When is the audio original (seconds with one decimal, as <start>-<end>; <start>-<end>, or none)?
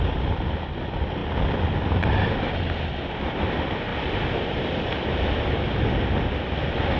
0.0-7.0